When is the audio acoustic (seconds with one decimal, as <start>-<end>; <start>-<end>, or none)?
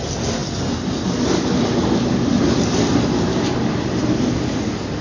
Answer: 0.0-5.0